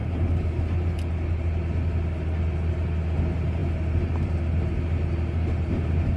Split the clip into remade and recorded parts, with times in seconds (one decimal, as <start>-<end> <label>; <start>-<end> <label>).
0.0-6.2 recorded